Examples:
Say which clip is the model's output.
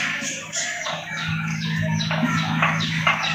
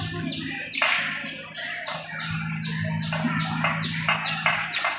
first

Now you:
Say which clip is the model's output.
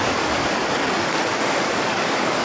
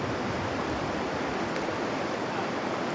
first